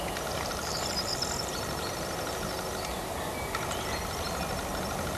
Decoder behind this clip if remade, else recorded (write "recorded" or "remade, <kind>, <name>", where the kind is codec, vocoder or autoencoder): recorded